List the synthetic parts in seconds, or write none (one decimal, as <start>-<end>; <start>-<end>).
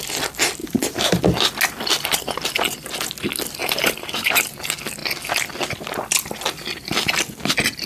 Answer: 0.6-1.2; 3.6-4.5